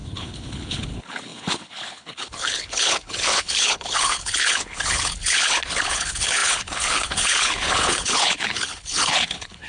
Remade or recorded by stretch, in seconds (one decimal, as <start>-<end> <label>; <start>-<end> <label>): 0.0-9.7 remade